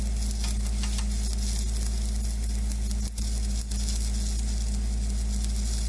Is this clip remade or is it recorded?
recorded